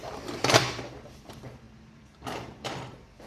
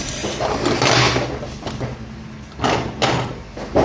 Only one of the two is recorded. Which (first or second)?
second